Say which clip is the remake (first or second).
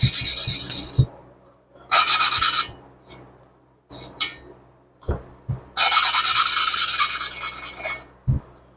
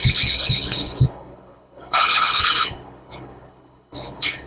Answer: second